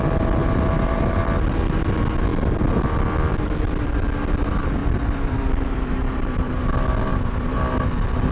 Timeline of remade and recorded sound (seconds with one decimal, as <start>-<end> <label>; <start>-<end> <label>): 0.0-0.4 recorded; 0.4-1.2 remade; 1.2-4.8 recorded; 4.8-6.5 remade; 6.5-7.1 recorded; 7.1-7.6 remade; 7.6-8.3 recorded